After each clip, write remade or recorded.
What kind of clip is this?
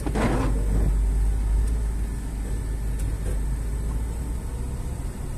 recorded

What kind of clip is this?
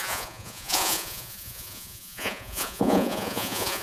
remade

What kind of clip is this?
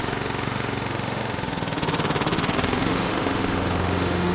remade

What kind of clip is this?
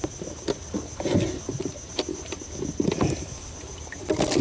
recorded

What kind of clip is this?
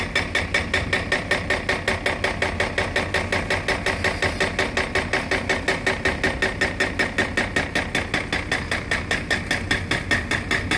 recorded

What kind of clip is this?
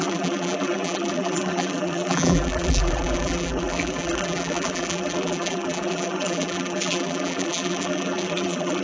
remade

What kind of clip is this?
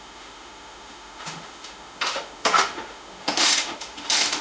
remade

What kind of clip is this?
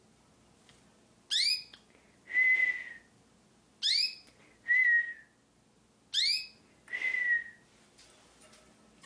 recorded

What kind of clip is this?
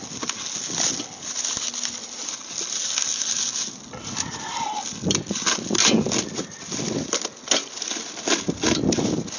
recorded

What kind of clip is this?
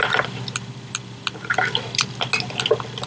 recorded